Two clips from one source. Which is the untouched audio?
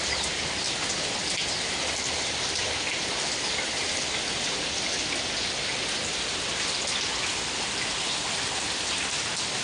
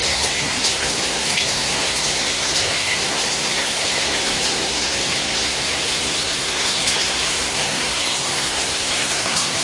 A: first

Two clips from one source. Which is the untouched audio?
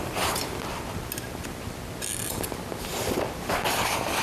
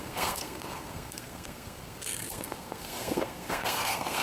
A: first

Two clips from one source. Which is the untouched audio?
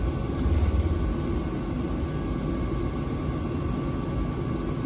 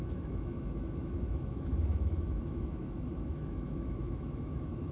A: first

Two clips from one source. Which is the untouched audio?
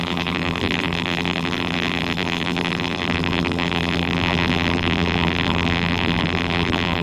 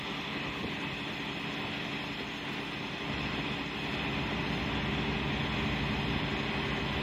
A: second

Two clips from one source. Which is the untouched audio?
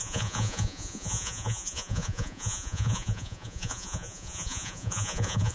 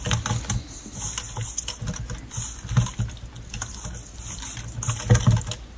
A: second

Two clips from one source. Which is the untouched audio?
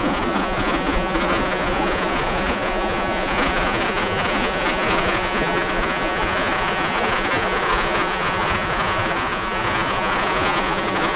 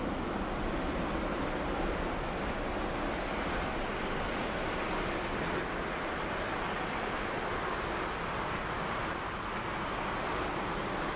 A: second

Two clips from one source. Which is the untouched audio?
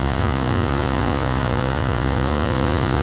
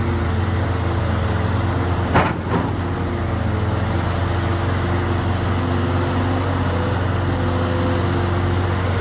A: second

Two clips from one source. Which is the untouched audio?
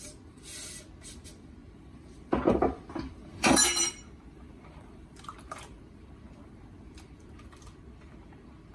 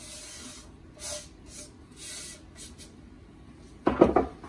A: second